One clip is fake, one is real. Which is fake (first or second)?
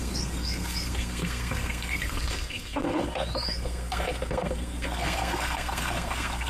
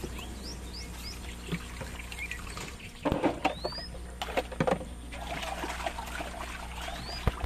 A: first